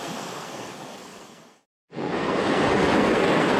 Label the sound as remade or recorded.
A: remade